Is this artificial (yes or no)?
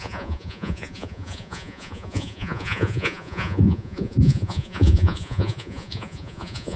yes